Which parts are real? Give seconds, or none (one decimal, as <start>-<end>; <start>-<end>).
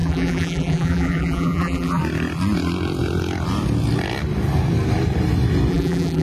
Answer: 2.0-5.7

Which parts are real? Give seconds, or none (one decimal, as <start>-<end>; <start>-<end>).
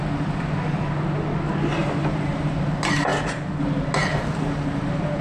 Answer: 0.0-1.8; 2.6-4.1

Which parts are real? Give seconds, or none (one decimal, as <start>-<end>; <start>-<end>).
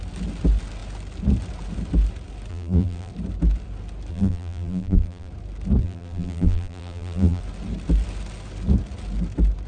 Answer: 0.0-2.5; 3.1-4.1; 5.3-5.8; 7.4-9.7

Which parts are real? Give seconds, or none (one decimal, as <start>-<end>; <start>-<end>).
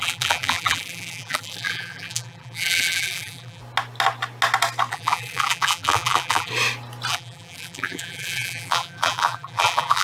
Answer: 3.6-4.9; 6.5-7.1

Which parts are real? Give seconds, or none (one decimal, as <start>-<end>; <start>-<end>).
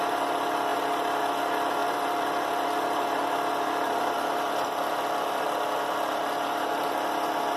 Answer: 0.0-1.8; 6.2-7.6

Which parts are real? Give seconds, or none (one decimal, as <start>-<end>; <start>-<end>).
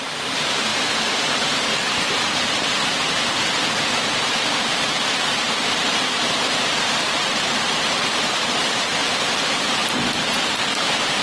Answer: 9.8-10.7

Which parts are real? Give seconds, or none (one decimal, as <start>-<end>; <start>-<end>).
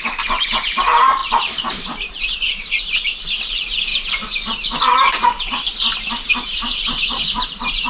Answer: 3.9-6.3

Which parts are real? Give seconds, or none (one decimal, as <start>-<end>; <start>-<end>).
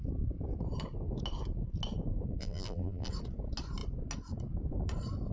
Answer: 0.0-2.4; 3.1-5.3